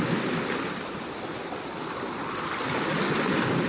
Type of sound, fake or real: real